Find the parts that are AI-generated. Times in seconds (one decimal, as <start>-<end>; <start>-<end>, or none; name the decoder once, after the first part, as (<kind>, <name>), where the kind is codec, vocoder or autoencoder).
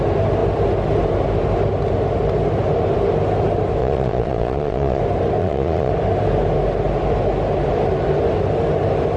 3.8-5.0 (vocoder, Vocos); 5.4-5.9